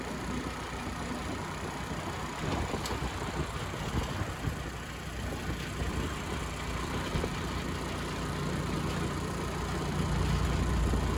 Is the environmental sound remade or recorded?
recorded